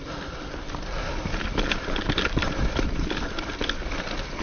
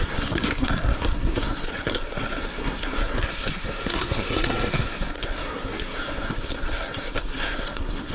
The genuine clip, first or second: first